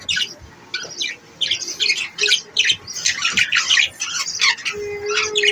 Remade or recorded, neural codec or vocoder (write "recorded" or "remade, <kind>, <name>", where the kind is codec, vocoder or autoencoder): recorded